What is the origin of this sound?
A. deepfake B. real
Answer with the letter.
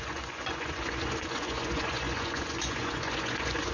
A